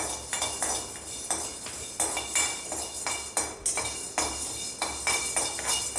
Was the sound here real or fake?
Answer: real